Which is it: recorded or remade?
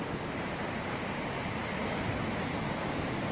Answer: recorded